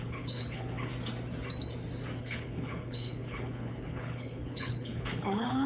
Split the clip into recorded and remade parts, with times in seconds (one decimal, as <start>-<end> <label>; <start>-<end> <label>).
0.0-0.9 remade; 0.9-2.2 recorded; 2.2-5.7 remade